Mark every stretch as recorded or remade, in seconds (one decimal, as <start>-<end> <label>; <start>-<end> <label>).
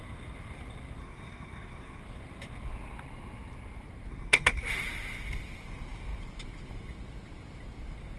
0.0-1.0 recorded; 1.0-2.0 remade; 2.0-4.1 recorded; 4.1-4.6 remade; 4.6-8.2 recorded